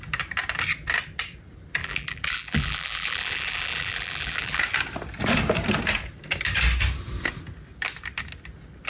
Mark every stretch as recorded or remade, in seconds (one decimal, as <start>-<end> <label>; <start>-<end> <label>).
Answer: 0.0-1.8 recorded; 1.8-4.6 remade; 4.6-8.9 recorded